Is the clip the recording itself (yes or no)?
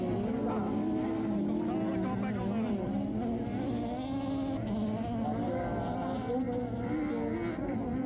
yes